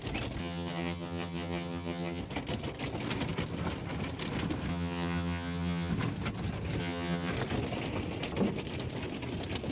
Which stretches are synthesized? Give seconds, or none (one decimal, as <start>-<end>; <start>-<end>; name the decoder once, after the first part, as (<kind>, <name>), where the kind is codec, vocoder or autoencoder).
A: 0.4-2.2 (vocoder, HiFi-GAN); 4.7-5.9; 6.8-7.3